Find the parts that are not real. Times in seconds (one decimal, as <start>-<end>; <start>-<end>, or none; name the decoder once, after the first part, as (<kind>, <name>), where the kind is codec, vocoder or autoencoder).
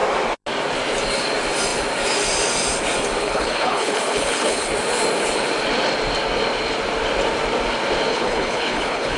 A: 3.2-4.7 (codec, HILCodec); 8.1-9.2